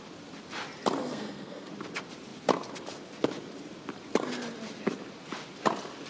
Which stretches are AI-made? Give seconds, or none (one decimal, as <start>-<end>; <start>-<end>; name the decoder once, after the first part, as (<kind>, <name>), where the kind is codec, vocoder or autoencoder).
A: 1.0-1.7 (codec, SNAC)